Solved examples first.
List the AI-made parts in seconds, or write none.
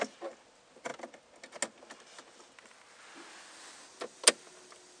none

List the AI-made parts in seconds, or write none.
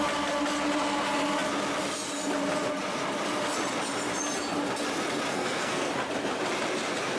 5.3-5.9 (codec, SNAC)